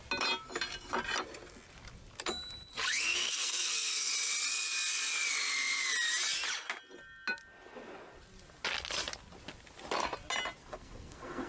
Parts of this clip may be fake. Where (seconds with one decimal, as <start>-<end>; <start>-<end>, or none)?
2.7-4.1; 10.6-11.5